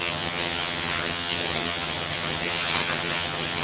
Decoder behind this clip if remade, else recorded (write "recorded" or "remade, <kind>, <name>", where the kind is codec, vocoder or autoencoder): remade, vocoder, HiFi-GAN